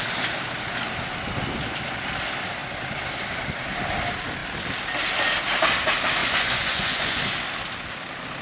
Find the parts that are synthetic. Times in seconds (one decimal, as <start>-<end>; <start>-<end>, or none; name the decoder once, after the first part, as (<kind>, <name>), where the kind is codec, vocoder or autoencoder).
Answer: 6.2-7.2 (vocoder, Vocos)